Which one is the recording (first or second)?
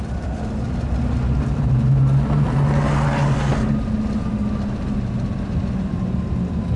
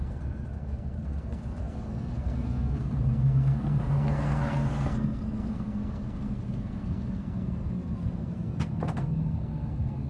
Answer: first